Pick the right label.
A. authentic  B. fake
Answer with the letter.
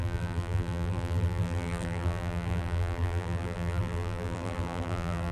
B